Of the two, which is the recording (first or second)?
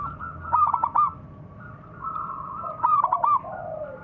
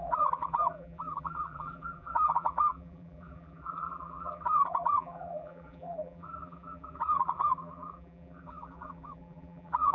first